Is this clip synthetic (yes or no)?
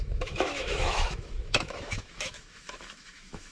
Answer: yes